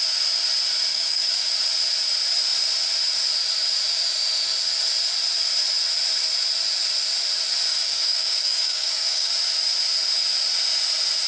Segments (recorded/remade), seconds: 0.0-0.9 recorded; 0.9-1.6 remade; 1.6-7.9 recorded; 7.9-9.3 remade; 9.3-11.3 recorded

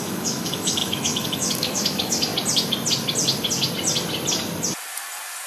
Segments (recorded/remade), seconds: 0.0-2.3 remade; 2.3-5.5 recorded

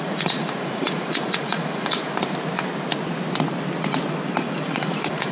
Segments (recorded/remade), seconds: 0.0-2.0 remade; 2.0-4.4 recorded; 4.4-5.3 remade

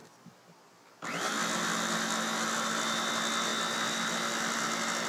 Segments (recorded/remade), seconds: 0.0-5.1 recorded

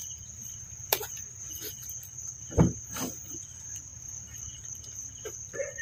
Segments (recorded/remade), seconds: 0.0-1.8 remade; 1.8-3.3 recorded; 3.3-5.8 remade

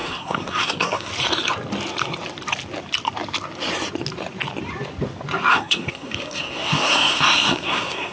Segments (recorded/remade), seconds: 0.0-1.1 remade; 1.1-5.5 recorded; 5.5-8.1 remade

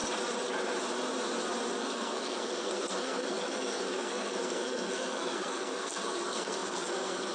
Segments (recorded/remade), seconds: 0.0-1.8 recorded; 1.8-7.3 remade

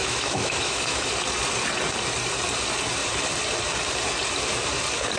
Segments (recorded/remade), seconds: 0.0-1.1 remade; 1.1-5.2 recorded